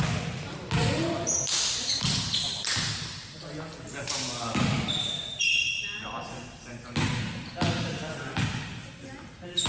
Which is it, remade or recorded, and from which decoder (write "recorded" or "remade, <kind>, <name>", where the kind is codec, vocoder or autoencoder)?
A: recorded